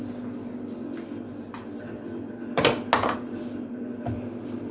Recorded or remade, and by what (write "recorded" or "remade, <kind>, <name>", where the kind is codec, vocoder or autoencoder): recorded